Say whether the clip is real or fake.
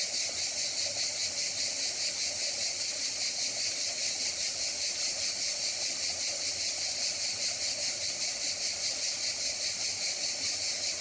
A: real